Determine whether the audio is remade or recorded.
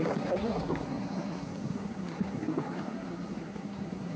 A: remade